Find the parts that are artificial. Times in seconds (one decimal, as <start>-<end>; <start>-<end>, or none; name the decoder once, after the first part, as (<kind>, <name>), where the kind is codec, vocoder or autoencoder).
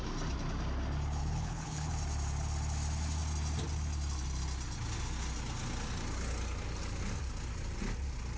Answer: 1.2-1.9 (codec, HILCodec)